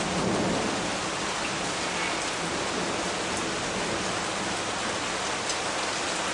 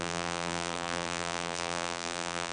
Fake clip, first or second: second